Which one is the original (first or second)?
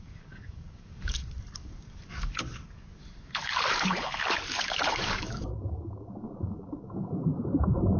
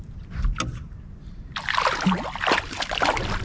second